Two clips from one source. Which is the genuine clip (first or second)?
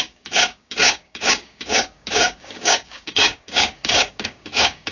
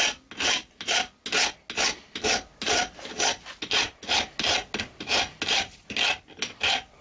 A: second